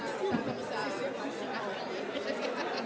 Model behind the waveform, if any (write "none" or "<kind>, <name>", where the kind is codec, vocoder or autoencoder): none